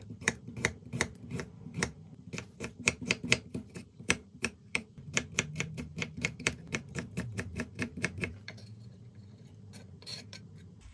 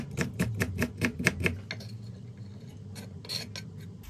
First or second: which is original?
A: second